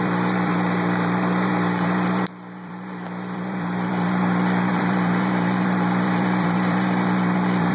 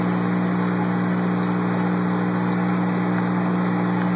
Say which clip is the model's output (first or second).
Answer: first